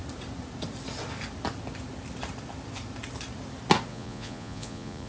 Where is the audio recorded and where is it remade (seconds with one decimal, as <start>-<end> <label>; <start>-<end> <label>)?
0.0-3.9 recorded; 3.9-5.1 remade